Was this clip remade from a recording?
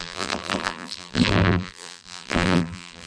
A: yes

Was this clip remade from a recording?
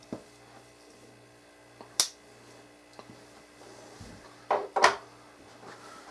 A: no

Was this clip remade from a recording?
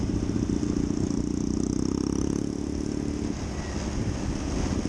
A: no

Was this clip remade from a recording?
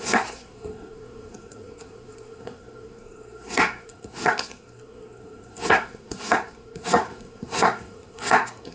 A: yes